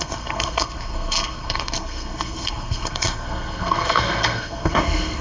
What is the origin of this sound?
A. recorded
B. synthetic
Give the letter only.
B